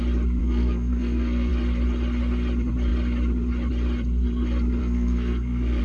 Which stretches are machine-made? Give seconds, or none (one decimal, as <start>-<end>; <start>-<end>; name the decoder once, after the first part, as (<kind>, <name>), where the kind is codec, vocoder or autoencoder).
0.4-1.5 (codec, SNAC); 4.8-5.8